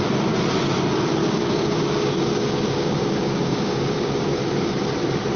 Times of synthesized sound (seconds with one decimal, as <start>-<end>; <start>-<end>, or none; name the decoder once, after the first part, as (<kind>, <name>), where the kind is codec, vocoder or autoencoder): 1.2-4.4 (codec, DAC)